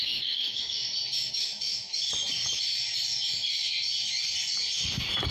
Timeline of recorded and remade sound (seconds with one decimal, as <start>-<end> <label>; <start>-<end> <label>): 0.0-0.8 remade; 0.8-1.3 recorded; 1.3-1.9 remade; 1.9-5.3 recorded

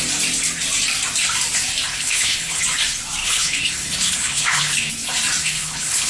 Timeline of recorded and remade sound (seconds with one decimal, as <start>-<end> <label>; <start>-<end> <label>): 0.0-1.9 recorded; 1.9-2.6 remade; 2.6-3.2 recorded; 3.2-4.9 remade; 4.9-5.4 recorded; 5.4-6.1 remade

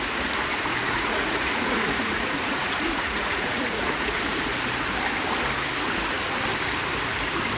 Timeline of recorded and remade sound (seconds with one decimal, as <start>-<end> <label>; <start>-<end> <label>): 0.0-0.5 recorded; 0.5-4.1 remade; 4.1-7.6 recorded

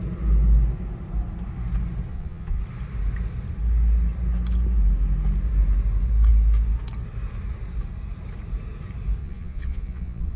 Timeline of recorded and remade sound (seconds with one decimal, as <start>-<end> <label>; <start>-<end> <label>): 0.0-2.1 recorded; 2.1-2.6 remade; 2.6-9.2 recorded; 9.2-10.4 remade

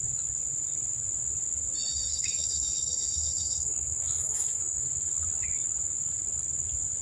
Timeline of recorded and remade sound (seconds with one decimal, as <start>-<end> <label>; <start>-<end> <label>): 0.0-2.1 recorded; 2.1-4.8 remade; 4.8-7.0 recorded

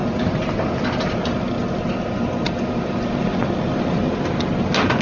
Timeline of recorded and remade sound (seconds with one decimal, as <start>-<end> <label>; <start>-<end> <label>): 0.0-5.0 recorded